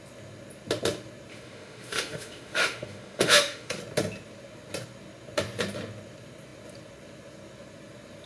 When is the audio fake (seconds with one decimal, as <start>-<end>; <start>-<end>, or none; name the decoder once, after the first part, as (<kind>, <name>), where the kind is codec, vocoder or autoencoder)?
1.3-3.8 (autoencoder, DAC-VAE)